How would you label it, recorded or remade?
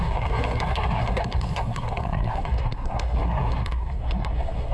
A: remade